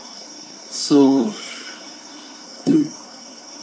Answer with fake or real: fake